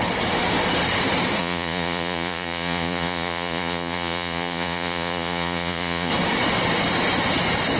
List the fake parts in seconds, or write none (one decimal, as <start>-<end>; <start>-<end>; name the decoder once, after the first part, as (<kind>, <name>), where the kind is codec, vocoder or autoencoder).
1.4-6.1 (vocoder, Vocos)